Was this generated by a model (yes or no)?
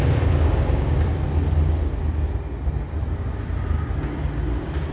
no